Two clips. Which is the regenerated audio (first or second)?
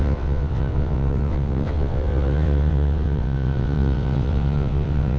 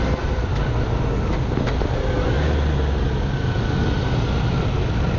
first